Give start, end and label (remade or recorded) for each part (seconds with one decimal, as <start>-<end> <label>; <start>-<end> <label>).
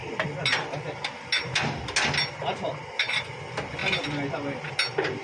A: 0.0-5.2 recorded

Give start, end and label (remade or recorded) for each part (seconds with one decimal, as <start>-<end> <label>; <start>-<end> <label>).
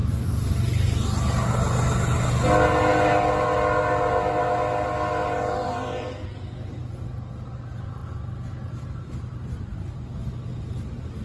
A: 0.0-11.2 recorded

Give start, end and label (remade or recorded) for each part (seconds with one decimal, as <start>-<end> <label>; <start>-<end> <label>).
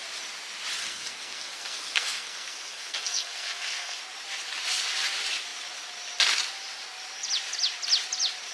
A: 0.0-0.8 recorded; 0.8-4.0 remade; 4.0-8.5 recorded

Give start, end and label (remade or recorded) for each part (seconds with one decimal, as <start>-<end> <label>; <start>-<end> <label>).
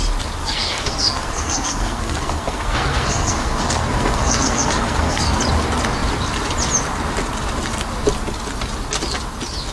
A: 0.0-0.4 recorded; 0.4-5.4 remade; 5.4-9.7 recorded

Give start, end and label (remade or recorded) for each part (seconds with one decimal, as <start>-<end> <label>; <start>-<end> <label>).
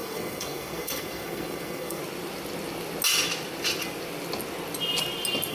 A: 0.0-2.0 remade; 2.0-5.5 recorded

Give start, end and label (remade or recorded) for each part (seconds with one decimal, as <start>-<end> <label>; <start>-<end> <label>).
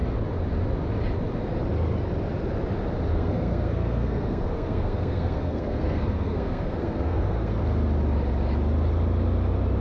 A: 0.0-3.1 recorded; 3.1-7.6 remade; 7.6-9.8 recorded